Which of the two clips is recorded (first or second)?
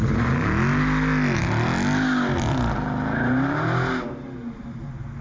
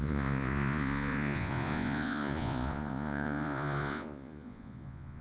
first